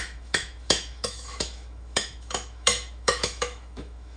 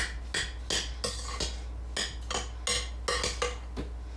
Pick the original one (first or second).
second